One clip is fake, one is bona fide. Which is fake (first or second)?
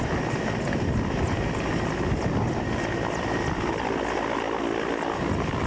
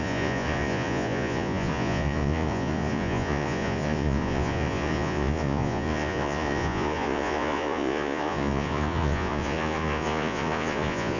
second